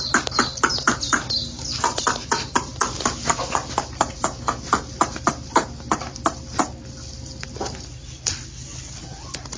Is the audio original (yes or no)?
yes